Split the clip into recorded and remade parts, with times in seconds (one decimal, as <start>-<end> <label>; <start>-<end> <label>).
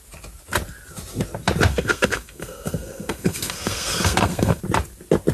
0.0-1.7 recorded; 1.7-4.6 remade; 4.6-5.3 recorded